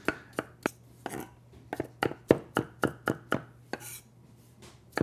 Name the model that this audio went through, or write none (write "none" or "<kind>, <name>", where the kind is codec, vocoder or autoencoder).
none